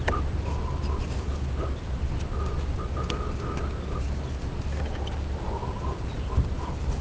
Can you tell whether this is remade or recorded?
recorded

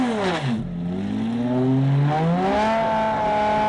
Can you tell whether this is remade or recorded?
recorded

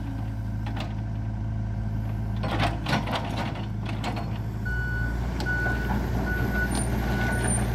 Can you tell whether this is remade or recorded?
recorded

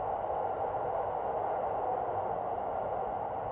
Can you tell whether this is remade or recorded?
recorded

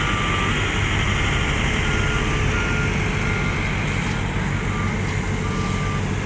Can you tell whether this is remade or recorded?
recorded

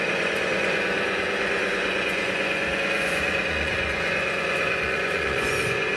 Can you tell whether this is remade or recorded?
remade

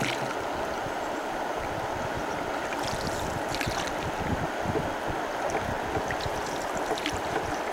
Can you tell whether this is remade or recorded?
recorded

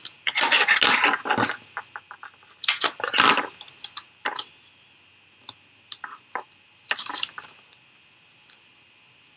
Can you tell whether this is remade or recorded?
recorded